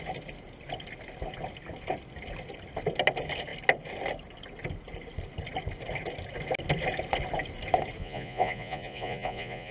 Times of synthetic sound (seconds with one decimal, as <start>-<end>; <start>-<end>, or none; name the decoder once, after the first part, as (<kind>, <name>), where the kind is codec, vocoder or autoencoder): 8.0-9.7 (vocoder, Vocos)